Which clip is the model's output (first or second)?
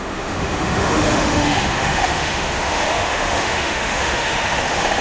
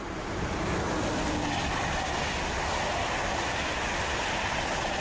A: first